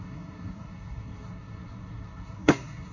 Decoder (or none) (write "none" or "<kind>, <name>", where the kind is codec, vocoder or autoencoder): codec, SNAC